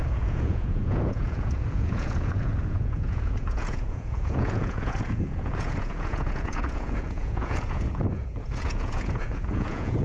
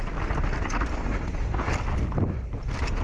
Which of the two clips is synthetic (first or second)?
first